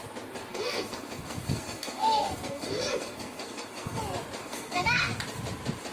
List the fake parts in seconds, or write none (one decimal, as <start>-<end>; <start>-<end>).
0.5-4.0; 4.4-5.2